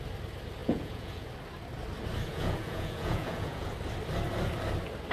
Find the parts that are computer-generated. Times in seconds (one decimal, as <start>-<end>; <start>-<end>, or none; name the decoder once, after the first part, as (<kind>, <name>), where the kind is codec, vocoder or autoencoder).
0.6-1.3 (vocoder, Vocos); 2.3-3.7